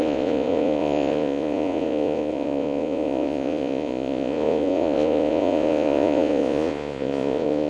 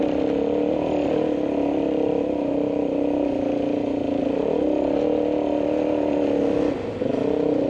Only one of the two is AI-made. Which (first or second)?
first